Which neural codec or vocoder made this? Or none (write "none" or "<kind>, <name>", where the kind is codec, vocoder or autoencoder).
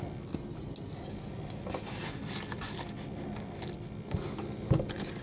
none